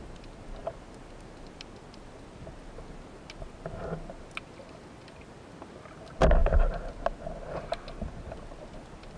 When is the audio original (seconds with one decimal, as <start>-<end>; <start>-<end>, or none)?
0.0-9.2